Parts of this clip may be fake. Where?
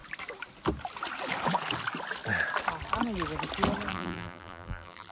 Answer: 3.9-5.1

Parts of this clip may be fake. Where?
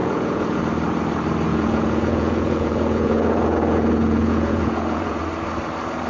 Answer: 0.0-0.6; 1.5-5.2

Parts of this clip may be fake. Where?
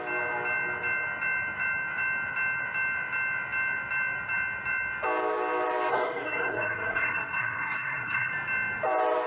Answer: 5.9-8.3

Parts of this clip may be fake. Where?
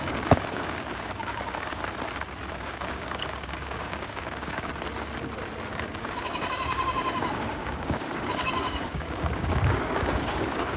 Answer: 0.0-1.8; 2.5-4.7; 5.7-10.8